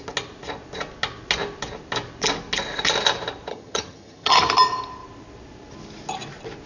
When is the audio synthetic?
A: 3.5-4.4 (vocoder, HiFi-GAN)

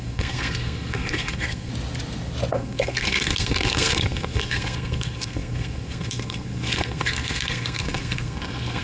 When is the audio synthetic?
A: 0.0-1.7 (codec, SNAC); 2.5-8.8

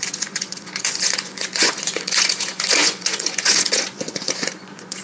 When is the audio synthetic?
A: 0.0-5.0 (vocoder, Vocos)

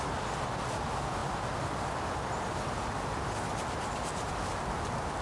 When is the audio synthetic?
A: none

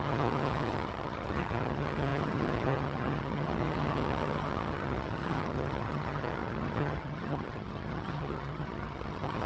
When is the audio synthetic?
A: 0.0-9.5 (vocoder, HiFi-GAN)